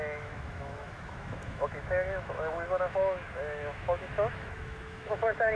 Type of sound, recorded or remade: remade